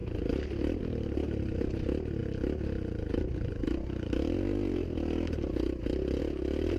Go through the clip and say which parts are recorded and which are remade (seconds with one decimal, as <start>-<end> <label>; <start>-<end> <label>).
0.0-0.8 remade; 0.8-6.8 recorded